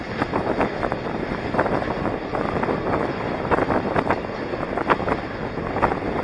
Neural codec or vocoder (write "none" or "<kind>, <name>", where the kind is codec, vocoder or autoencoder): none